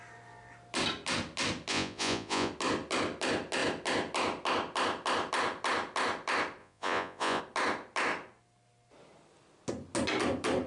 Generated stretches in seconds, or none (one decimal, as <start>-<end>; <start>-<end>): 1.7-2.5; 6.6-7.4